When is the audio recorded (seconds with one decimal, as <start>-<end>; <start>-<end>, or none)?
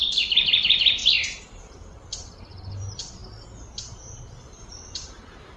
1.0-1.6; 3.2-4.1